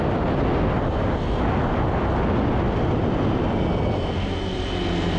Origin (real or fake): real